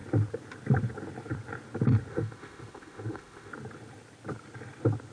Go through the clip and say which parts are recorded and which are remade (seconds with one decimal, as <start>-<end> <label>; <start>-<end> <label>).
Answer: 0.0-2.1 recorded; 2.1-3.5 remade; 3.5-5.1 recorded